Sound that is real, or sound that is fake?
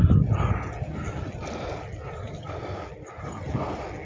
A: real